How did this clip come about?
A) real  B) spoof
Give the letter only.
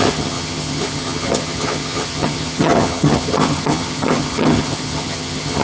B